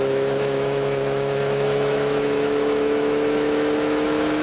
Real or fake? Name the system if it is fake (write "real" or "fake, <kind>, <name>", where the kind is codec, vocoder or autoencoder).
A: fake, autoencoder, DAC-VAE